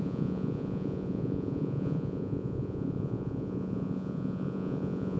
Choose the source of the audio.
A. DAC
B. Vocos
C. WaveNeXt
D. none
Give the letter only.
B